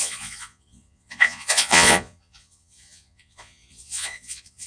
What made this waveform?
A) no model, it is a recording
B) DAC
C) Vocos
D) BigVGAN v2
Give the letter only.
C